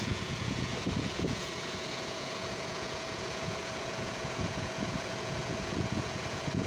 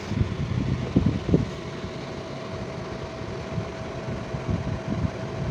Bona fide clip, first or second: second